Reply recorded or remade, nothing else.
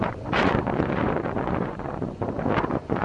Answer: remade